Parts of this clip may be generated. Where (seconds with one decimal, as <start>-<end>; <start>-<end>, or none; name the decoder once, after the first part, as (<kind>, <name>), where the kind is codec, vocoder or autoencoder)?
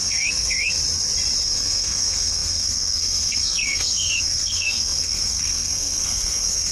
0.0-0.8 (codec, SNAC); 1.4-6.7